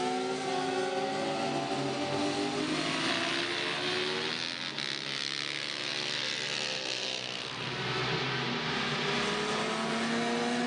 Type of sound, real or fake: real